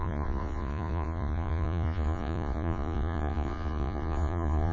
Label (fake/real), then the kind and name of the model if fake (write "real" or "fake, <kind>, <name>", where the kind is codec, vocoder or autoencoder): fake, vocoder, Vocos